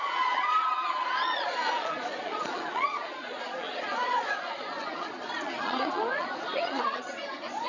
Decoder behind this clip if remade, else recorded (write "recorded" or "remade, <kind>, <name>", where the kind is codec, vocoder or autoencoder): remade, vocoder, Vocos